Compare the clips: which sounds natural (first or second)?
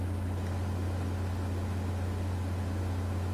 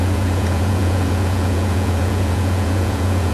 first